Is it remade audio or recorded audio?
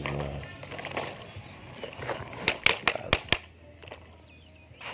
recorded